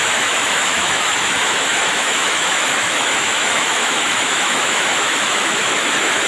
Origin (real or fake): fake